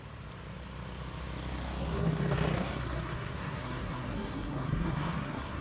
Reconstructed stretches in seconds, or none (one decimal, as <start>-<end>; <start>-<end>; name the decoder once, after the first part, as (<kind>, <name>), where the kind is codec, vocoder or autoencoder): 1.8-5.6 (codec, SNAC)

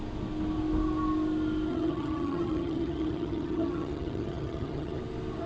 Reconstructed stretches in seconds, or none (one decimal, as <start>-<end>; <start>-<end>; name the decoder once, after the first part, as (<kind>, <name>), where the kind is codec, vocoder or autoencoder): 1.7-5.0 (vocoder, HiFi-GAN)

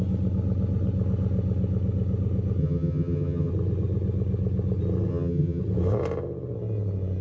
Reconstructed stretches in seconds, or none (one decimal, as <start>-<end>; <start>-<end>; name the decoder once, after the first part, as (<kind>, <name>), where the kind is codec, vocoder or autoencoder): 2.6-3.5 (vocoder, HiFi-GAN); 5.1-5.6

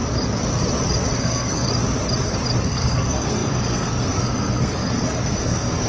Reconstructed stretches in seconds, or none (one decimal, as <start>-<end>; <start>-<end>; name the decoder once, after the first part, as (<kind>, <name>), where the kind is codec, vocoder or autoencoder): 1.2-1.7 (codec, SNAC); 2.6-5.9

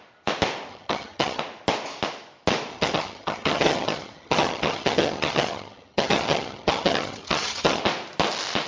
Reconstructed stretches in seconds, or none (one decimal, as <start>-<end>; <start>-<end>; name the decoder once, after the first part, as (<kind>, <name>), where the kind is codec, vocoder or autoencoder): 0.7-1.4 (vocoder, HiFi-GAN); 2.7-7.8

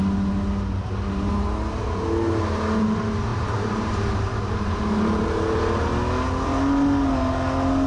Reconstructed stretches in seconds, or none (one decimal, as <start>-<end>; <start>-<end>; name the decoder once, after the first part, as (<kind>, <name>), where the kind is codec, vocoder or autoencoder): 3.3-5.6 (vocoder, BigVGAN v2)